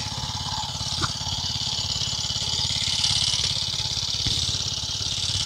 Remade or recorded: recorded